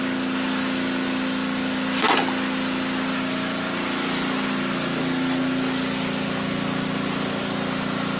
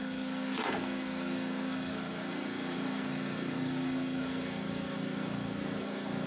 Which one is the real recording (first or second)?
first